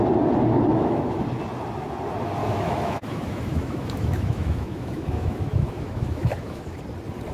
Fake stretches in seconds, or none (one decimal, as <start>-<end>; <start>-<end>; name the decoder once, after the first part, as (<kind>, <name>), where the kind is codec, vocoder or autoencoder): 0.7-1.2 (autoencoder, DAC-VAE); 2.4-6.8